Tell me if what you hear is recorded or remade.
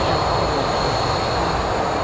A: recorded